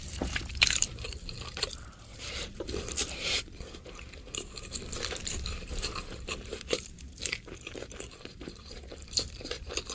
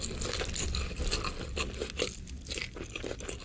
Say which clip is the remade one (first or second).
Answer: first